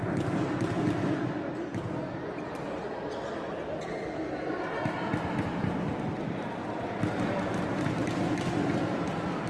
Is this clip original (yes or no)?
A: yes